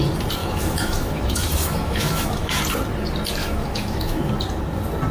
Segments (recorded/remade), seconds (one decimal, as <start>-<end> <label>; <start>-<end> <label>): 0.0-0.4 recorded; 0.4-2.6 remade; 2.6-3.4 recorded; 3.4-4.3 remade; 4.3-5.1 recorded